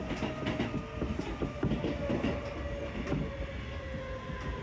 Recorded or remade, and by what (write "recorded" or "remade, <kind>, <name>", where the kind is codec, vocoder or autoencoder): recorded